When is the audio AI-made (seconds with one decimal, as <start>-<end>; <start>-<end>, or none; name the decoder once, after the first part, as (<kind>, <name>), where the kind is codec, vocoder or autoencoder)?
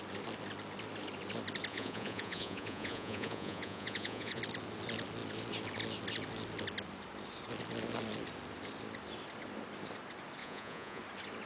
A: 1.7-4.4 (vocoder, Vocos); 10.4-11.0